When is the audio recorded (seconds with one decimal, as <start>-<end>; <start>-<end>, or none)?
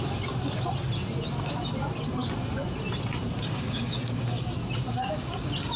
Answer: 0.0-3.5; 4.6-5.8